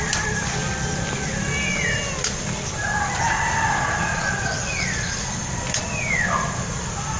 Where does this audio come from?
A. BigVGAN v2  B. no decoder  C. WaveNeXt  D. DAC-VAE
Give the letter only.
A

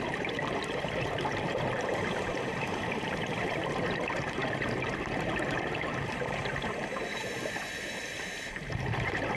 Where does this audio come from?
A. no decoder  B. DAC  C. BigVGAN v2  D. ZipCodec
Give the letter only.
C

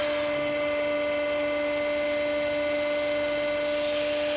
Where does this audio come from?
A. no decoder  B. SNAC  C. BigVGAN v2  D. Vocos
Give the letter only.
A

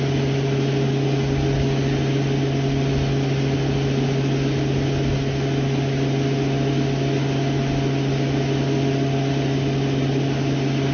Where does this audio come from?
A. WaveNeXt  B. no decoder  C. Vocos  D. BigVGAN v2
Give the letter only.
B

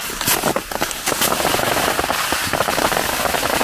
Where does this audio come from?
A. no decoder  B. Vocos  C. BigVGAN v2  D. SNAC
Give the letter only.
A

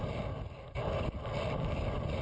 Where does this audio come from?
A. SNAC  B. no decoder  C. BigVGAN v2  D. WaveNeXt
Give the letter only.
B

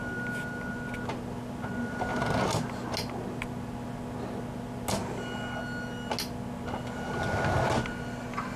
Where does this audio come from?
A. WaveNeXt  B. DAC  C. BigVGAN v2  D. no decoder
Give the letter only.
D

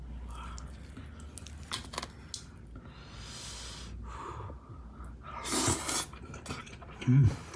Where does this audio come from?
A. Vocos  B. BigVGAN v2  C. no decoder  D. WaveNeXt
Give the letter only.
C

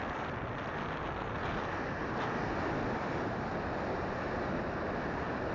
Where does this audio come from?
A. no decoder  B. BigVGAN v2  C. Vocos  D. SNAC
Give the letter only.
A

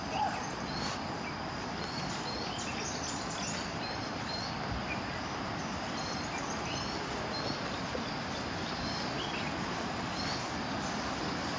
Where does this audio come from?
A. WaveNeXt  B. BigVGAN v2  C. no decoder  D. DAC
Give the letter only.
B